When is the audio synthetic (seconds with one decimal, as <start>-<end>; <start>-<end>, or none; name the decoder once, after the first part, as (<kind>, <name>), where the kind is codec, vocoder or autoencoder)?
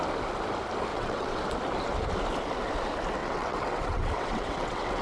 0.9-1.4 (vocoder, WaveNeXt); 3.2-5.0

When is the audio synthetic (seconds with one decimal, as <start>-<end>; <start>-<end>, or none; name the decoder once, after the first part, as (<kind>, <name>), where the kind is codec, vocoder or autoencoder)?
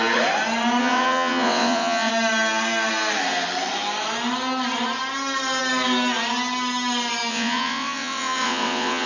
0.8-2.1 (vocoder, WaveNeXt); 7.3-9.1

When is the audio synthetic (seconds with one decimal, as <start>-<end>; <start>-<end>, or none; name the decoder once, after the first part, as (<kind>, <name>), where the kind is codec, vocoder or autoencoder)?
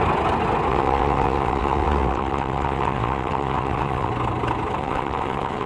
0.7-4.1 (vocoder, WaveNeXt); 4.8-5.7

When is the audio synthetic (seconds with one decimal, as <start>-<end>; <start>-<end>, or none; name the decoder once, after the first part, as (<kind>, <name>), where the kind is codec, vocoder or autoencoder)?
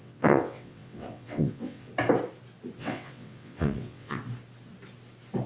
0.0-1.9 (vocoder, WaveNeXt); 2.8-4.2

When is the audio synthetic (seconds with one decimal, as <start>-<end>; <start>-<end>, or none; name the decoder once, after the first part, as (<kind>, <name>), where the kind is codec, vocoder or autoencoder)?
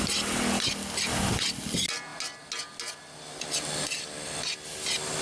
none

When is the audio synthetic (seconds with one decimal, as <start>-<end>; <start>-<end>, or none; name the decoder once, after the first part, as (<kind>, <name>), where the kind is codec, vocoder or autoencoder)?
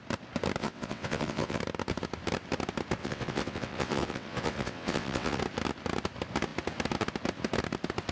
0.6-1.6 (vocoder, WaveNeXt); 3.0-5.4